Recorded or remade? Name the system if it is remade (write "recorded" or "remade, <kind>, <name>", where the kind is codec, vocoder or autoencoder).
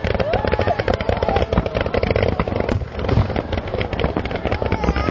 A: recorded